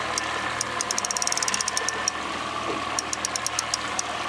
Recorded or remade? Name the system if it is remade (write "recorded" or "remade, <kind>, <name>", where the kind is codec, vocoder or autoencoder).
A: recorded